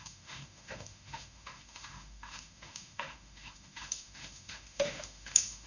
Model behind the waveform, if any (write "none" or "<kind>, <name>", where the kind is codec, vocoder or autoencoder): autoencoder, DAC-VAE